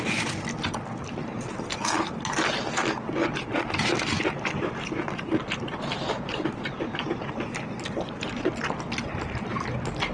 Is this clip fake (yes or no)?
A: no